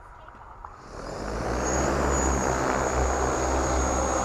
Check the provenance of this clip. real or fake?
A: real